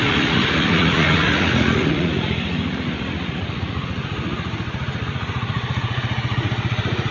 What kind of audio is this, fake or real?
fake